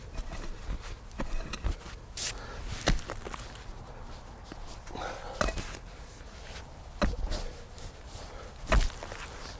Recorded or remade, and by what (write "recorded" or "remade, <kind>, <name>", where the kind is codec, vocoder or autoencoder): recorded